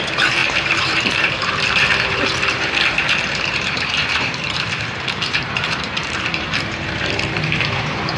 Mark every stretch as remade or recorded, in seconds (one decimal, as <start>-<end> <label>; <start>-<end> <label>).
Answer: 0.0-8.2 remade